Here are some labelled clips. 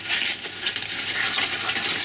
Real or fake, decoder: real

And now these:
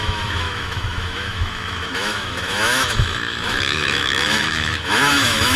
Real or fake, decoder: fake, autoencoder, DAC-VAE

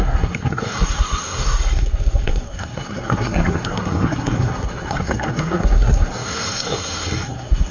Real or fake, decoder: fake, codec, SNAC